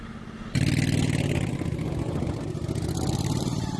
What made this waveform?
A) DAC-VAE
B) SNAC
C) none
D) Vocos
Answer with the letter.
C